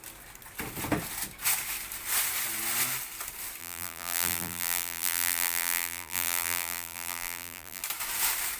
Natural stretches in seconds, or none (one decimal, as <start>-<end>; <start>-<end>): 0.0-3.6; 7.8-8.6